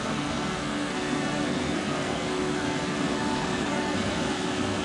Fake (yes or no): yes